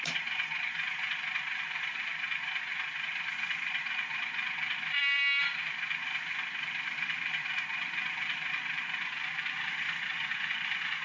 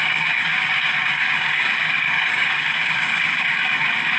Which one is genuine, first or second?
first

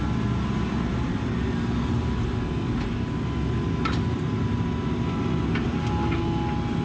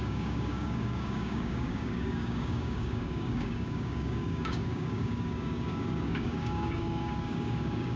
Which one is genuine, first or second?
first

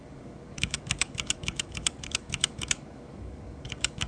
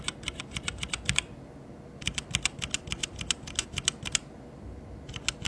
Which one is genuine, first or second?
second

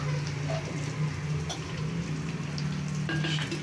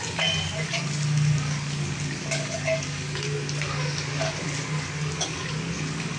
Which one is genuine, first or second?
first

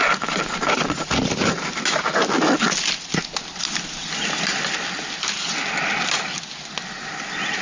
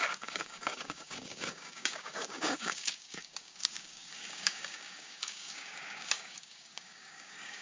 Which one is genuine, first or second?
first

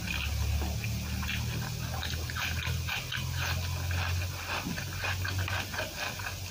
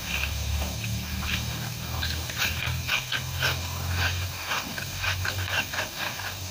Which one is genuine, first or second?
first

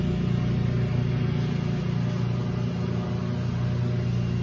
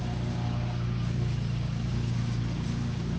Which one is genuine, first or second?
first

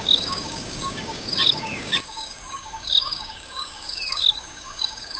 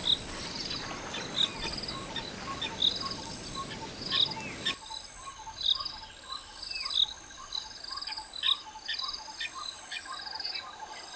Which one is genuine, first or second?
second